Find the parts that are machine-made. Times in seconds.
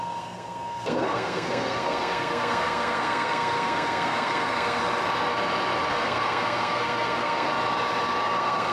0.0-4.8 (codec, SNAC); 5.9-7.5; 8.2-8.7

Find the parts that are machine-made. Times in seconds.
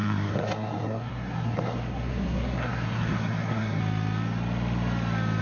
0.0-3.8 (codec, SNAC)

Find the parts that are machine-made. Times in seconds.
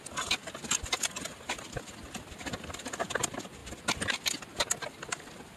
none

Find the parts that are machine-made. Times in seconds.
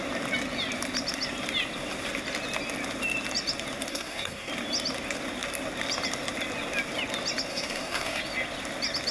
3.9-4.5 (codec, SNAC); 7.5-8.2